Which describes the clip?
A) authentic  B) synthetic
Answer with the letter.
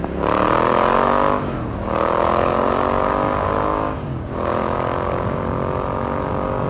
B